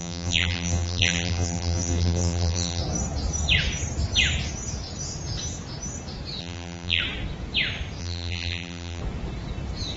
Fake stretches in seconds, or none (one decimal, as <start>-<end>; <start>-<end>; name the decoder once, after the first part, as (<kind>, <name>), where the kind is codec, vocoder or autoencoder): 0.0-2.8 (vocoder, BigVGAN v2); 6.4-7.0; 8.0-9.0